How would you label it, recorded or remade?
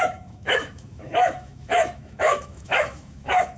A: remade